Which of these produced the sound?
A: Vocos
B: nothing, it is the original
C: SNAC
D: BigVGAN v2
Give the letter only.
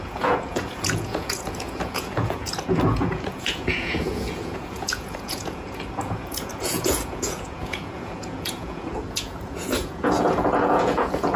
A